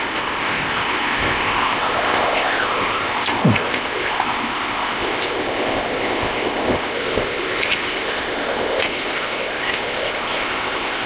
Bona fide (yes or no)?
no